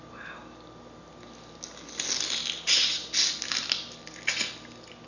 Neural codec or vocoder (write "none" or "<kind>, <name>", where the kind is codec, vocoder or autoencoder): none